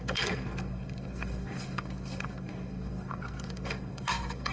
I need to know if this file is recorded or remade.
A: remade